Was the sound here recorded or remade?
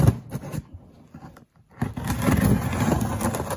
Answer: recorded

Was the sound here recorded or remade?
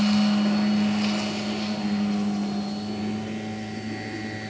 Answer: recorded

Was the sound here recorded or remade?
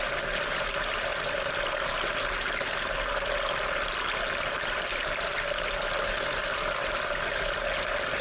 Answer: recorded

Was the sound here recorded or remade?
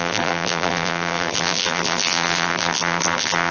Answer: remade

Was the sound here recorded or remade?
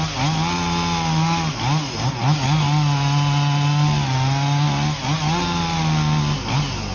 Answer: recorded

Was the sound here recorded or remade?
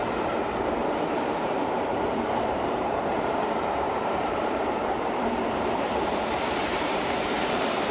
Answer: remade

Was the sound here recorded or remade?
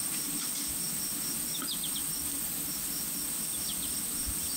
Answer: recorded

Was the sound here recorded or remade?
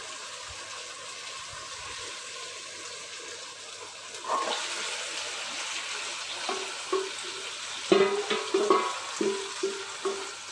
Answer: recorded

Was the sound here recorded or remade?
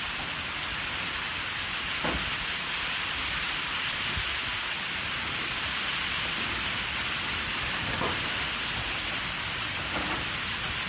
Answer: recorded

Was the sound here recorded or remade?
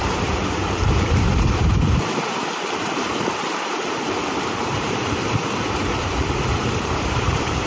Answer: remade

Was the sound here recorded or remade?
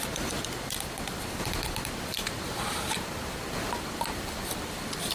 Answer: remade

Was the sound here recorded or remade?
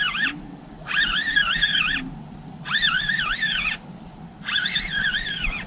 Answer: recorded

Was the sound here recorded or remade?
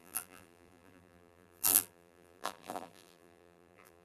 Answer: remade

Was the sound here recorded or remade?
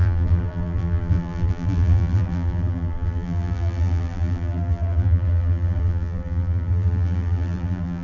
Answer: remade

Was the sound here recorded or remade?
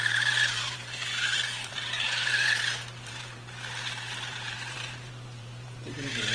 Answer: remade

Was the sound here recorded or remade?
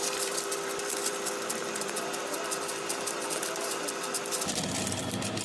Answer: remade